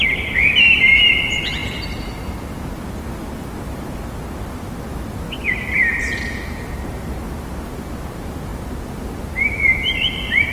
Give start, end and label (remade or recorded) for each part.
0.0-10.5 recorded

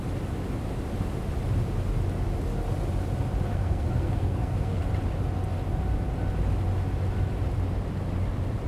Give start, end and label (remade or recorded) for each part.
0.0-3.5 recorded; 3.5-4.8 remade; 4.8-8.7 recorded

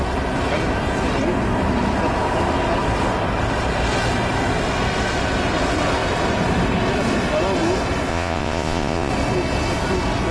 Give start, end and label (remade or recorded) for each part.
0.0-8.1 recorded; 8.1-9.1 remade; 9.1-10.3 recorded